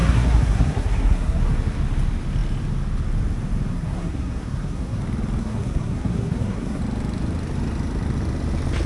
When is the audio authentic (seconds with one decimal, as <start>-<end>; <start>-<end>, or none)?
1.4-3.7; 5.0-5.4; 6.8-8.9